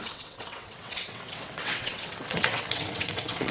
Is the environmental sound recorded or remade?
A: remade